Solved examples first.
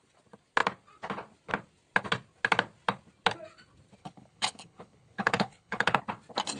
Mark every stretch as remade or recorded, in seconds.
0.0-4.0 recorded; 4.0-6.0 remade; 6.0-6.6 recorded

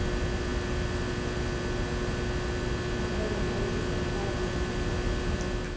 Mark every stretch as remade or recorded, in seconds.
0.0-5.8 recorded

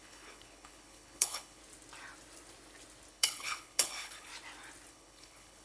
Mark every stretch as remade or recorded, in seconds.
0.0-1.6 remade; 1.6-3.1 recorded; 3.1-4.3 remade; 4.3-4.9 recorded; 4.9-5.6 remade

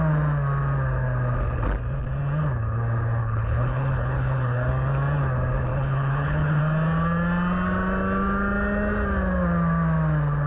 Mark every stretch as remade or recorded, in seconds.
0.0-3.2 recorded; 3.2-4.7 remade; 4.7-5.7 recorded; 5.7-6.6 remade; 6.6-10.5 recorded

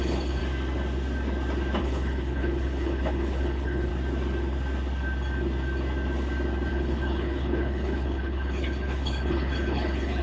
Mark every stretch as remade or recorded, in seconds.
0.0-0.4 remade; 0.4-1.8 recorded; 1.8-3.9 remade; 3.9-6.7 recorded; 6.7-10.2 remade

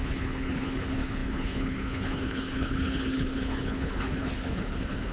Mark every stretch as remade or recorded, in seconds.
0.0-5.1 remade